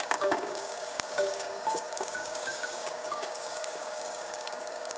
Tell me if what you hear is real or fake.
fake